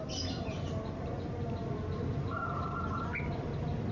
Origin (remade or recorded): recorded